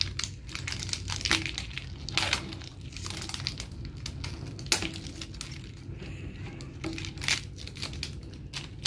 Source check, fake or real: real